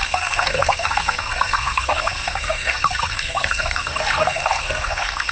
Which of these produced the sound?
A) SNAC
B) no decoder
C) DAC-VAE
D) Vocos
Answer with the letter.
A